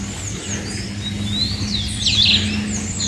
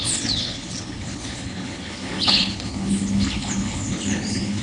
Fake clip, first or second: second